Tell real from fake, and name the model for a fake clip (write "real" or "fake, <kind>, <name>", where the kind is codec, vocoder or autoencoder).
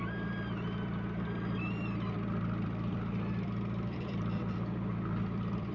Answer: fake, vocoder, BigVGAN v2